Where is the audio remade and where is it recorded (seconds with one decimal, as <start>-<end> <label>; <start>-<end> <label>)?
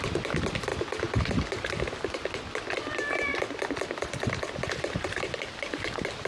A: 0.0-6.3 recorded